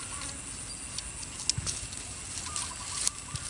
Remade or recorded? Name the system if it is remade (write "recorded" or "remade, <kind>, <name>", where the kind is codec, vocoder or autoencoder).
recorded